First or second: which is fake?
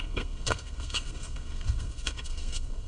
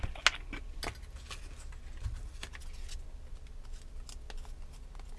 first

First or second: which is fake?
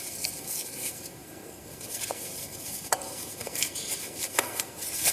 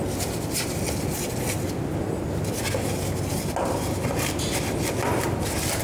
first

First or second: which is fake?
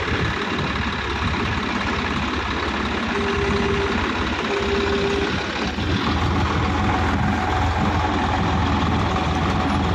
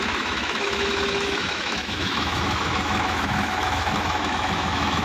second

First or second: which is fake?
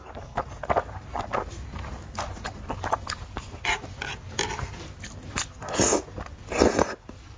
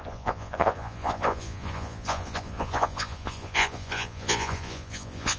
second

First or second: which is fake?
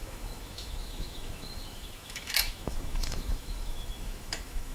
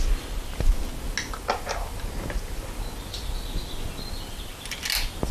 first